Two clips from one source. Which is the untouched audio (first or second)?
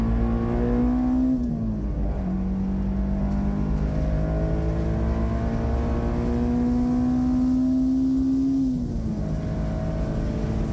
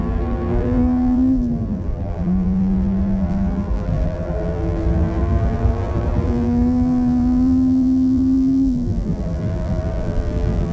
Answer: first